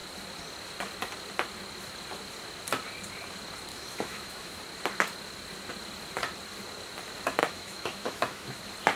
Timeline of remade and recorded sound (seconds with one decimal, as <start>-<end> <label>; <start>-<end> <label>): 0.0-3.7 recorded; 3.7-4.6 remade; 4.6-7.4 recorded; 7.4-8.6 remade; 8.6-9.0 recorded